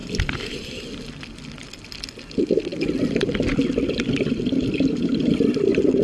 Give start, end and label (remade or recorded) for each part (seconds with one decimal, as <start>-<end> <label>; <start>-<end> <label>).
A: 0.0-6.0 recorded